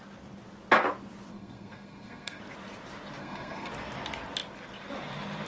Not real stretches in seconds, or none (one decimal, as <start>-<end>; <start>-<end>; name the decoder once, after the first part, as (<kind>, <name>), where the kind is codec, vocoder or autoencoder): 1.3-2.4 (codec, SNAC); 3.2-3.7